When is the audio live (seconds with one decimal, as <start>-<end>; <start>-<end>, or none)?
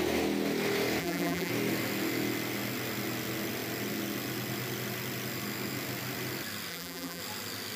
0.0-1.0; 1.5-6.7; 7.2-7.8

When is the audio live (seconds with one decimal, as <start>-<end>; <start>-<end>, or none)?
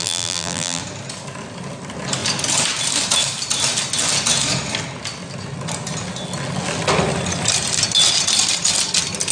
0.8-9.3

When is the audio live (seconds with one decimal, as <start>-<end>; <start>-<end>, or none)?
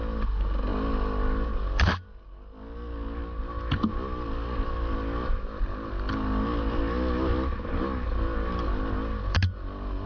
0.0-10.1